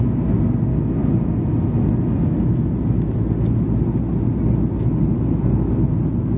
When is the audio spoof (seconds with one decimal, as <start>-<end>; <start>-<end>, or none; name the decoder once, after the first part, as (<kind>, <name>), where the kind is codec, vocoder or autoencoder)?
none